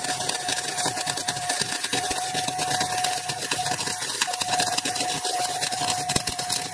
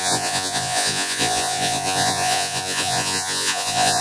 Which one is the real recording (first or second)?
first